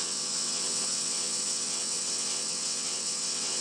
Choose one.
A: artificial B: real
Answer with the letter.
A